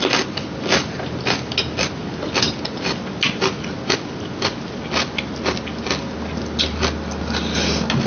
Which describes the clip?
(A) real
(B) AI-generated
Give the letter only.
A